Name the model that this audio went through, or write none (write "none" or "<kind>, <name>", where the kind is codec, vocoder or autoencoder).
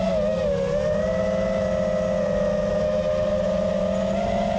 none